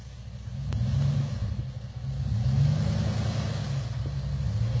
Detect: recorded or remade recorded